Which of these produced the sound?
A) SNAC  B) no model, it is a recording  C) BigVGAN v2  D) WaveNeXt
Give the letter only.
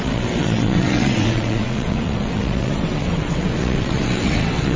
D